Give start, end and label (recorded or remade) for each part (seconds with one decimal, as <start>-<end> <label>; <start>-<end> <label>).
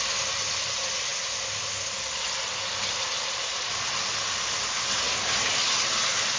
0.0-6.4 recorded